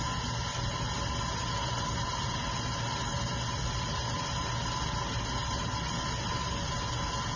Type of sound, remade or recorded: recorded